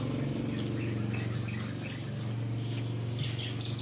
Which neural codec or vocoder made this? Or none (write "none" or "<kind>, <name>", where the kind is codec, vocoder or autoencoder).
none